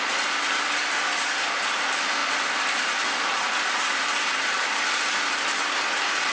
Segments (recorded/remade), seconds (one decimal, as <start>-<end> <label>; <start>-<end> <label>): 0.0-6.3 recorded